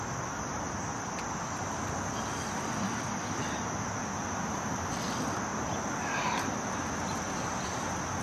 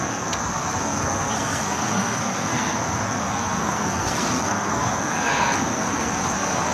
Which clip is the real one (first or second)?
first